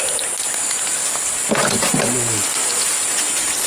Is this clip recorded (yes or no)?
yes